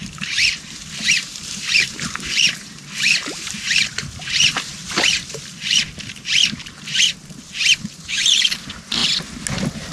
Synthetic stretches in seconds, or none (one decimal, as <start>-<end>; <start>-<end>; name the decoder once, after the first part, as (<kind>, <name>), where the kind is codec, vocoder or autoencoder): 0.0-9.0 (vocoder, BigVGAN v2); 9.5-9.9